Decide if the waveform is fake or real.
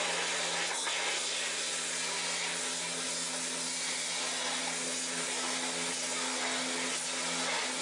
real